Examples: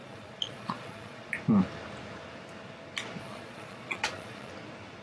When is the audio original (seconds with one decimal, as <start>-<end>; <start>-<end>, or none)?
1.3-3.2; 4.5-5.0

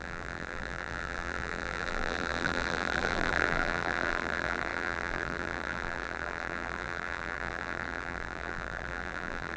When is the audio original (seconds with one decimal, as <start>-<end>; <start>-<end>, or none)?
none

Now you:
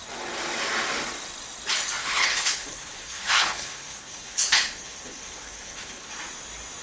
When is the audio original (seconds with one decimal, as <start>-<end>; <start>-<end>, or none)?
0.0-2.0; 6.1-6.8